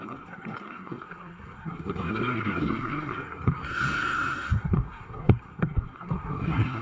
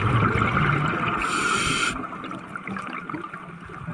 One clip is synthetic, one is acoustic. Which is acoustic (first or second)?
second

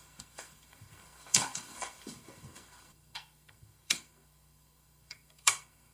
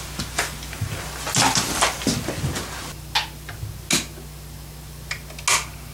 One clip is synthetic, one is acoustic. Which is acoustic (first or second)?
second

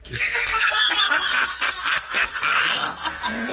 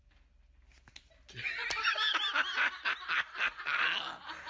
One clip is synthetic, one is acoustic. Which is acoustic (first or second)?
second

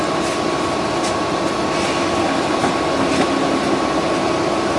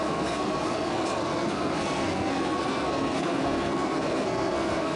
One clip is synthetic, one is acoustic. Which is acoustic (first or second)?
first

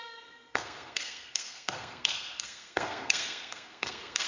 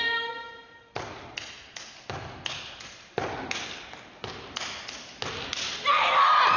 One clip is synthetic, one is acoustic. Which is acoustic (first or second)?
second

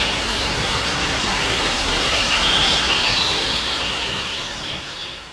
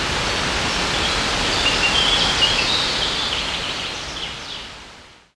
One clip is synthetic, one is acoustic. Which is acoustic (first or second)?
second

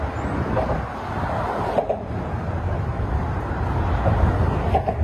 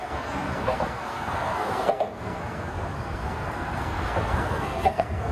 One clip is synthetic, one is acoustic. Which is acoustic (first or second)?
first